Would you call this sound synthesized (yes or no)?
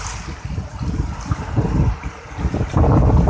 no